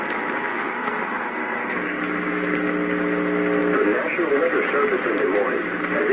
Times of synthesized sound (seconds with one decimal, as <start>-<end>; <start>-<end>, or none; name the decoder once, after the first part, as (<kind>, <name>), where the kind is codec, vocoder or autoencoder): 0.5-2.0 (codec, SNAC)